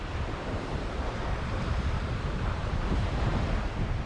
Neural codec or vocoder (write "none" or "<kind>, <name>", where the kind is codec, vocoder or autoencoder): vocoder, BigVGAN v2